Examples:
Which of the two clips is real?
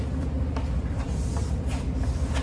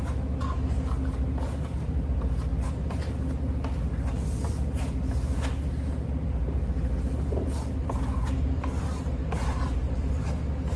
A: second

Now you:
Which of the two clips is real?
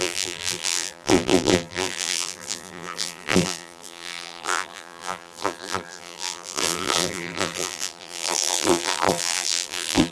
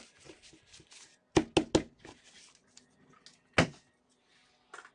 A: second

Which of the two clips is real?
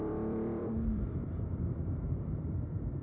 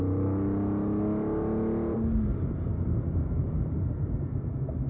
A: second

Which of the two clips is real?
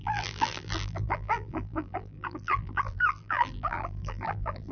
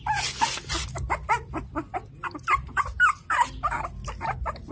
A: second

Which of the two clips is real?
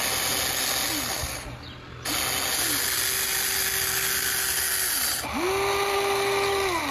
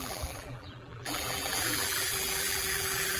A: first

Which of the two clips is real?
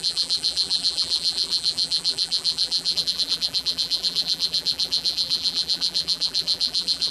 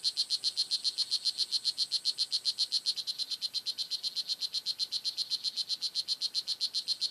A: second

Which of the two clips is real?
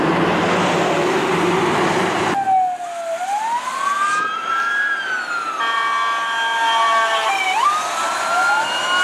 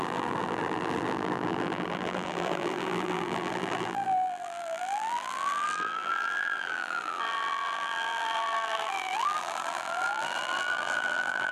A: first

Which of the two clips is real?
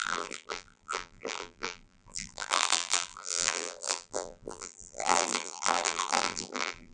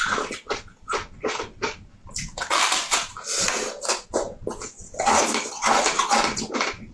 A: second